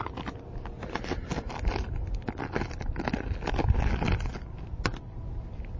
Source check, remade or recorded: recorded